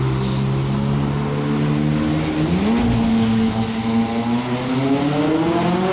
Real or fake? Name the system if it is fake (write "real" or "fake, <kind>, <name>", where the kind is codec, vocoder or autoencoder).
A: real